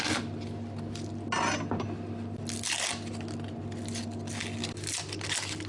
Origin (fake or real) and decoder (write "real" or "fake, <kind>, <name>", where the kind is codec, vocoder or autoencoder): real